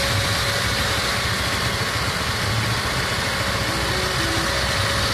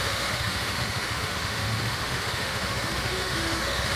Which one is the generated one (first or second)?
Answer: second